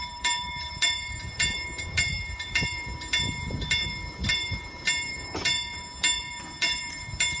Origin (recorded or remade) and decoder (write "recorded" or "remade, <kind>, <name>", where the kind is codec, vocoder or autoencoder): remade, vocoder, BigVGAN v2